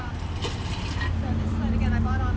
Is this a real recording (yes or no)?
no